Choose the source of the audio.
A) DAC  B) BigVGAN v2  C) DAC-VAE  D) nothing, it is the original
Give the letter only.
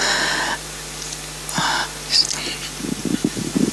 D